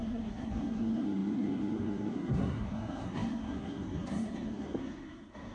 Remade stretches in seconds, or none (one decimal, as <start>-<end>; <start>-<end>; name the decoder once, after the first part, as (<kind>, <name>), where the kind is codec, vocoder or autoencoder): 0.0-5.5 (codec, SNAC)